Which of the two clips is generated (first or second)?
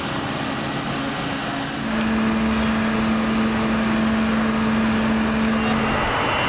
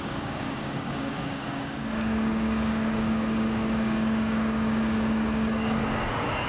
second